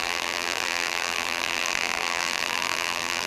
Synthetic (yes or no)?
yes